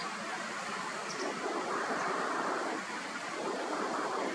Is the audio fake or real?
real